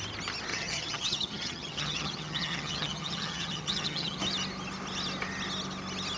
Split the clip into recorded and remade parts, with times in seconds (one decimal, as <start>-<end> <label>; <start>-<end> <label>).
0.0-0.5 recorded; 0.5-4.2 remade; 4.2-6.2 recorded